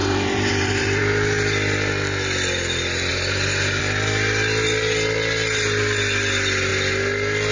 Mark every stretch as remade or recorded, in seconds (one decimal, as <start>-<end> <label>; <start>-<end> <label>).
0.0-1.0 remade; 1.0-3.1 recorded; 3.1-3.8 remade; 3.8-7.5 recorded